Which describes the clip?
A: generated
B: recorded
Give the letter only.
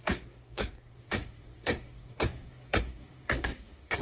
A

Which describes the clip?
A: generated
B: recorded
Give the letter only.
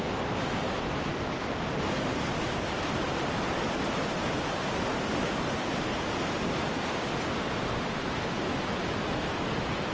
B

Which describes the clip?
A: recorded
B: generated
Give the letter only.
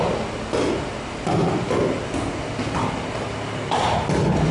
A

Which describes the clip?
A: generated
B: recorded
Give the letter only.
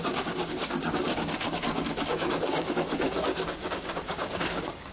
A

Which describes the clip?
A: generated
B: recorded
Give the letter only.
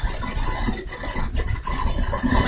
B